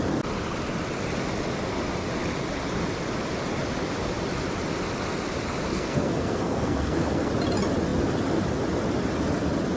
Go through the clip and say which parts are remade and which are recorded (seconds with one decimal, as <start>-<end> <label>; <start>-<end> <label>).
0.0-5.7 recorded; 5.7-7.3 remade; 7.3-9.8 recorded